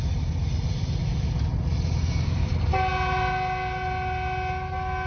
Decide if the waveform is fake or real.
real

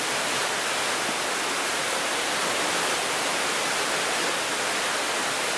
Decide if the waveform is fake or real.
real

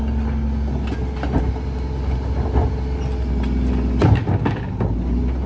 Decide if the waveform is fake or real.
real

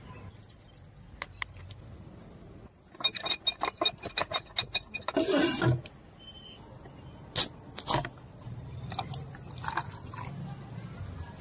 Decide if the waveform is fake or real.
real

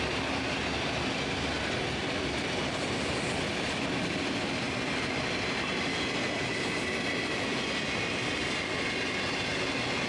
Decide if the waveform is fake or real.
real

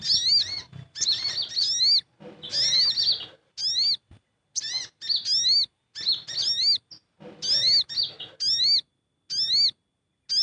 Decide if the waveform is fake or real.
real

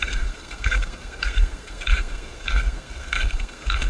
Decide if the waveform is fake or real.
fake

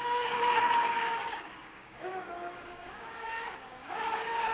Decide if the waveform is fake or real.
fake